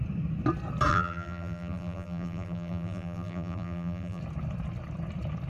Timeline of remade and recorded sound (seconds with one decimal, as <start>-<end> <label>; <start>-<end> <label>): 0.0-0.9 recorded; 0.9-4.2 remade; 4.2-5.5 recorded